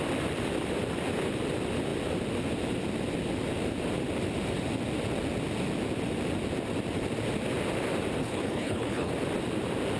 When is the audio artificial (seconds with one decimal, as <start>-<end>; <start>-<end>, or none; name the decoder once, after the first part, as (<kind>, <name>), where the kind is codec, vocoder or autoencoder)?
8.2-9.1 (codec, HILCodec)